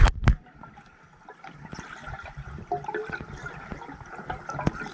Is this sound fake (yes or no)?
no